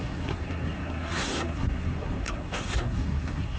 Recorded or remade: remade